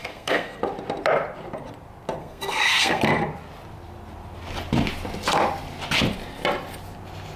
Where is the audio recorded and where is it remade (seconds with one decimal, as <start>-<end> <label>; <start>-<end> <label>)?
0.0-0.6 remade; 0.6-2.2 recorded; 2.2-3.0 remade; 3.0-7.4 recorded